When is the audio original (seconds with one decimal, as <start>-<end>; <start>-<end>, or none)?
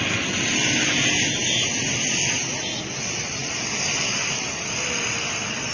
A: 0.0-5.7